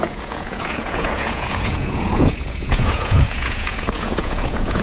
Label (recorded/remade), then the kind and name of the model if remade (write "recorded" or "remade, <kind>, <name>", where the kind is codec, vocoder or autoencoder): remade, vocoder, Vocos